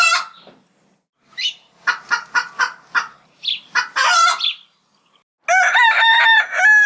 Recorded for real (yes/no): yes